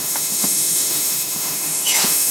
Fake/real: fake